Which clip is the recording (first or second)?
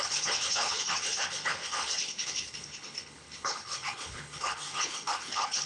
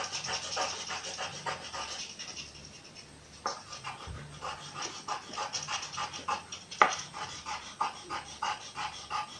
second